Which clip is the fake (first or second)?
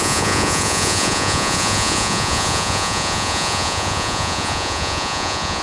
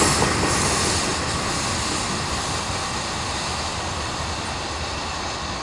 first